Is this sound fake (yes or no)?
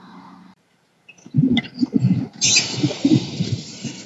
yes